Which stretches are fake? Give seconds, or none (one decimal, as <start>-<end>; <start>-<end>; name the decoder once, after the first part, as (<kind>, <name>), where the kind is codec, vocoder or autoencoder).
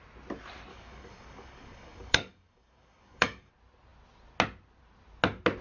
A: 0.7-3.5 (codec, DAC)